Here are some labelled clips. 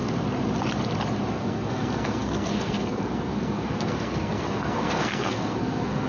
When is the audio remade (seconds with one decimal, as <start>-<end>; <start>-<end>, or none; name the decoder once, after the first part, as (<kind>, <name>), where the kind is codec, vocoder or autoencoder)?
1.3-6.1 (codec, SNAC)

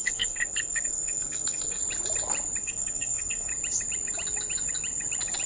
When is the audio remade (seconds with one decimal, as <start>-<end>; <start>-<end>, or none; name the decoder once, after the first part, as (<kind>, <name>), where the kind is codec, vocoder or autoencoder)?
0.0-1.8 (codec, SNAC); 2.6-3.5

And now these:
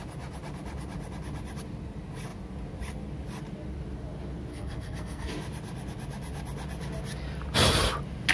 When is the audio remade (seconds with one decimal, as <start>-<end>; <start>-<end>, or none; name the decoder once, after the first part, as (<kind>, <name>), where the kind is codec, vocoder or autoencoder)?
4.5-5.3 (codec, SNAC)

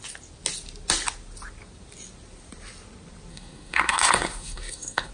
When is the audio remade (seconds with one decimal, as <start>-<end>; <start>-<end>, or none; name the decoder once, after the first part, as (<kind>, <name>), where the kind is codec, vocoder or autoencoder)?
3.3-5.1 (codec, SNAC)

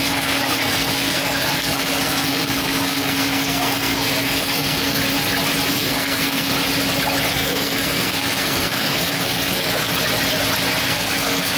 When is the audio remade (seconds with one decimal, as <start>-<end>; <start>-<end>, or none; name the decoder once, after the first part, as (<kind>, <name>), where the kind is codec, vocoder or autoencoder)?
0.0-5.0 (codec, SNAC); 5.7-6.5; 7.3-9.9; 10.8-11.6